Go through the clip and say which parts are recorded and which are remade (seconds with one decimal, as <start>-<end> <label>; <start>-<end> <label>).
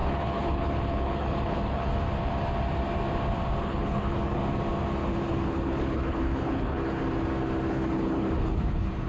0.0-1.9 remade; 1.9-3.6 recorded; 3.6-4.4 remade; 4.4-5.1 recorded; 5.1-7.0 remade; 7.0-7.7 recorded; 7.7-9.1 remade